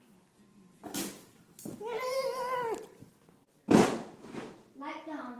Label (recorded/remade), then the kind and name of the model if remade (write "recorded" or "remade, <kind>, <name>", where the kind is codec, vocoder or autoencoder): recorded